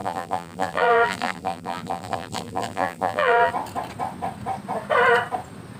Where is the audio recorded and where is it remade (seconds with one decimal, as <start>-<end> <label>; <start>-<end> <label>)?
0.0-3.5 remade; 3.5-5.8 recorded